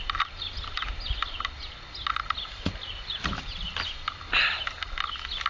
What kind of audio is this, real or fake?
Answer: real